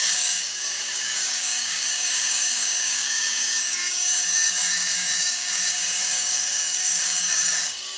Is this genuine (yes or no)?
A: no